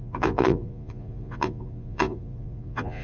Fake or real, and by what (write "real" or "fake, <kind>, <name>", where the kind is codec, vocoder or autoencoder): fake, vocoder, Vocos